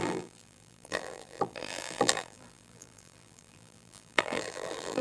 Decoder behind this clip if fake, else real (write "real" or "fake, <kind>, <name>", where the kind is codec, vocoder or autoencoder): fake, vocoder, BigVGAN v2